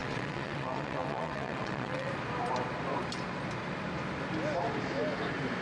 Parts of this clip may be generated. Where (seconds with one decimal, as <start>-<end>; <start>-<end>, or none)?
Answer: 0.0-2.1